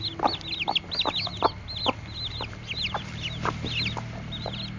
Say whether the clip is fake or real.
real